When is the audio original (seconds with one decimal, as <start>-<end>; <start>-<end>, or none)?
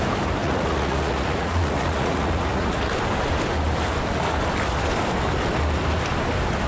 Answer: 0.0-0.4; 2.9-6.7